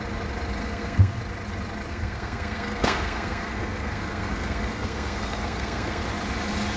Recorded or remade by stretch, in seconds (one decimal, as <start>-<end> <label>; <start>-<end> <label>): 0.0-0.6 recorded; 0.6-1.2 remade; 1.2-1.9 recorded; 1.9-6.0 remade; 6.0-6.8 recorded